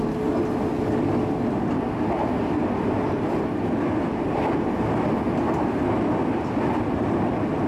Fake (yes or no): no